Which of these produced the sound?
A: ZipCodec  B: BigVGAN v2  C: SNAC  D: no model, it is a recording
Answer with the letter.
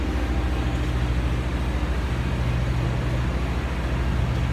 D